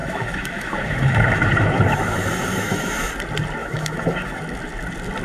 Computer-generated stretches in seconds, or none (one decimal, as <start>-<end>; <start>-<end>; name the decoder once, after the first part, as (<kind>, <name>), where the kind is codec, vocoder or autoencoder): 0.0-3.1 (autoencoder, DAC-VAE); 3.6-4.4

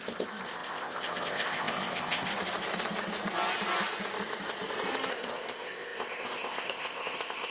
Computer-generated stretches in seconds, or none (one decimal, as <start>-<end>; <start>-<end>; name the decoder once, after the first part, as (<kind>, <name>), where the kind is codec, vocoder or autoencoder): 0.0-2.3 (codec, ZipCodec); 5.1-7.5

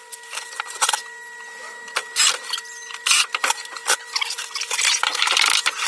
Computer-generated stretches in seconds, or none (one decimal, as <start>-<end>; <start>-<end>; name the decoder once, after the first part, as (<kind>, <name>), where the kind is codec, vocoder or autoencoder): 0.0-1.0 (vocoder, BigVGAN v2); 2.2-5.9

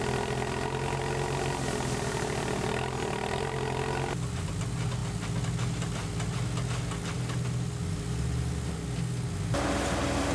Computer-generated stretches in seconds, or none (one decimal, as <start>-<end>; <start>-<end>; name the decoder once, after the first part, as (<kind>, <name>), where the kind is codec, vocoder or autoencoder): none

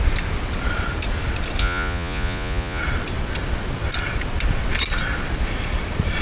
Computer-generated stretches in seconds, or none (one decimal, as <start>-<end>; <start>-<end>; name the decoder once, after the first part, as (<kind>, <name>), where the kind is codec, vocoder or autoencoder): 1.6-2.8 (vocoder, Vocos)

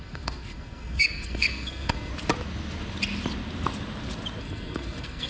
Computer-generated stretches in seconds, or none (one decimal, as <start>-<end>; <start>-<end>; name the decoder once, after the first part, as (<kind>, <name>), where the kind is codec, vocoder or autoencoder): 0.0-2.1 (codec, SNAC); 4.4-5.3